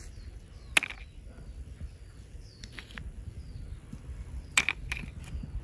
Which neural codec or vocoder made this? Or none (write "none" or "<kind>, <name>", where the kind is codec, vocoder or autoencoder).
none